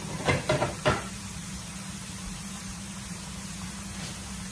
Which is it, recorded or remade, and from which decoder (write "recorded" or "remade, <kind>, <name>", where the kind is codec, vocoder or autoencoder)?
remade, vocoder, BigVGAN v2